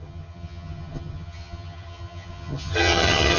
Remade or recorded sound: remade